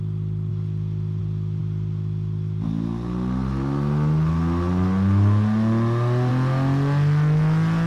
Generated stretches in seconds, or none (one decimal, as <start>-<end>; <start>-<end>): none